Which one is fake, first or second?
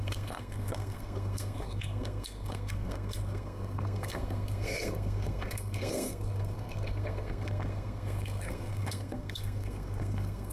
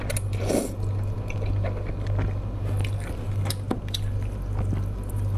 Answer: first